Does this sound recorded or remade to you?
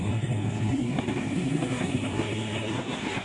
remade